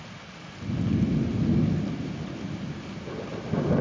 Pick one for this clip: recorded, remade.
recorded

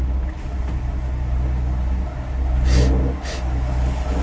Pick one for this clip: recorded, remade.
recorded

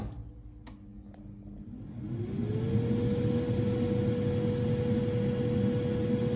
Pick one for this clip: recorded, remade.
recorded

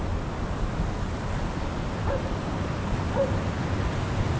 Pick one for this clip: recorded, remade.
recorded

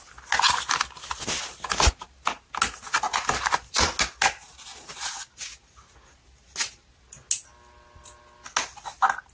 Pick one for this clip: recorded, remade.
recorded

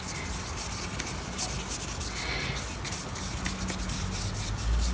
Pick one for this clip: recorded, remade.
recorded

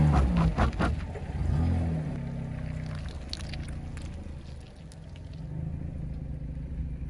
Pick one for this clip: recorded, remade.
recorded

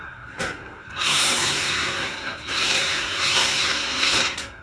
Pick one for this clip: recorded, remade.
remade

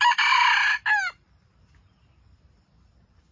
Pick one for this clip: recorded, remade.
recorded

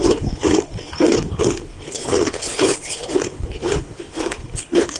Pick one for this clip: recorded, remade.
remade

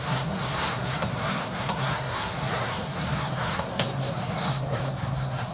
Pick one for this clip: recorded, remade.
remade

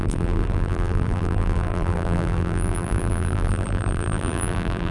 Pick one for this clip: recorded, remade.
remade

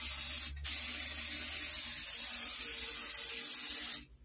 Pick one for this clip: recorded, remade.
recorded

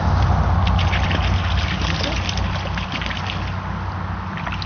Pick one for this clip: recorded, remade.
recorded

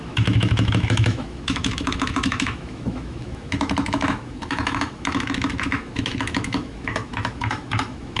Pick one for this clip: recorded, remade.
remade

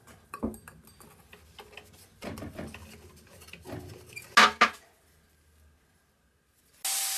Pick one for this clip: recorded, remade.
recorded